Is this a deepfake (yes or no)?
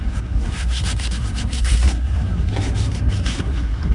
yes